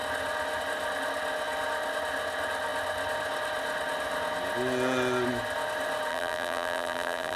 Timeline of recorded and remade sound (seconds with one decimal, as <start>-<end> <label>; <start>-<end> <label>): 0.0-6.1 recorded; 6.1-7.4 remade